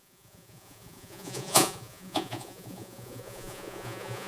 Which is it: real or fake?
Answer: fake